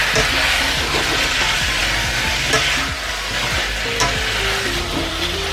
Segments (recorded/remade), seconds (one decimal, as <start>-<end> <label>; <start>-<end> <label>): 0.0-5.5 recorded